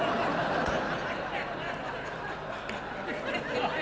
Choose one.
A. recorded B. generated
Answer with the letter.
A